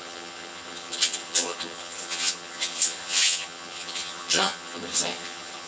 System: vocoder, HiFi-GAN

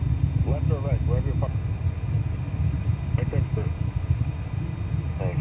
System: none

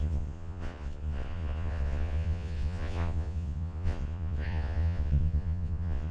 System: vocoder, Vocos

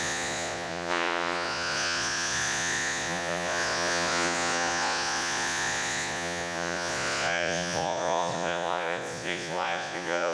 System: vocoder, Vocos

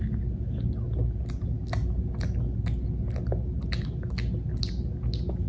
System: none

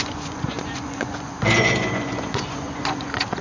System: vocoder, Vocos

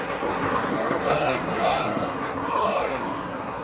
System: codec, SNAC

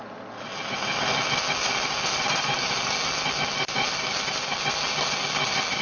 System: none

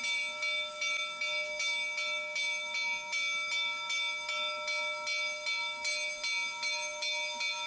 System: none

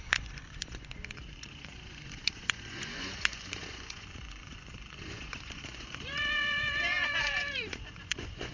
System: vocoder, Vocos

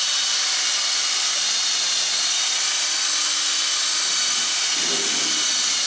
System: none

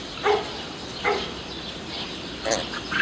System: none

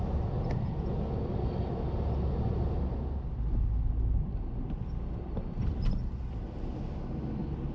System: none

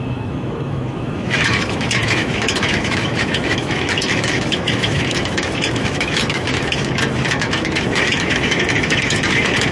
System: autoencoder, DAC-VAE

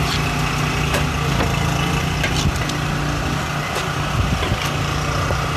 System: none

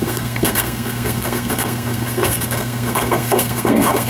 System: codec, SNAC